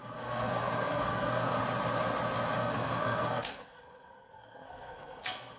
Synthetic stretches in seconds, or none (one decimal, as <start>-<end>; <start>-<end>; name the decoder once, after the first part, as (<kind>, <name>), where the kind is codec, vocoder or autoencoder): 0.0-1.6 (codec, SNAC); 2.6-5.6